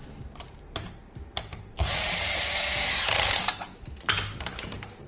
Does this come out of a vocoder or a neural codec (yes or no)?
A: yes